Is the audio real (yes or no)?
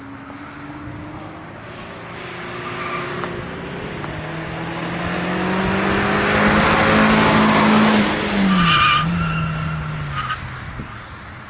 yes